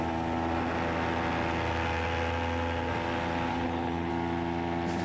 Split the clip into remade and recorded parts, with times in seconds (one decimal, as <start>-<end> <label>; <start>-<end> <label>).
0.0-3.5 recorded; 3.5-4.1 remade; 4.1-5.0 recorded